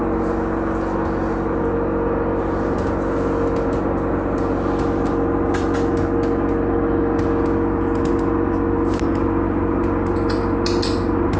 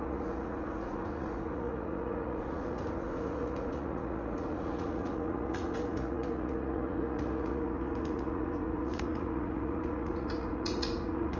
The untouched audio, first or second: first